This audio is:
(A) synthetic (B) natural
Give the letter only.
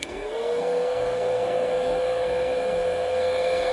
A